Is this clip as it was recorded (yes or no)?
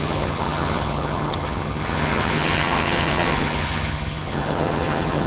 no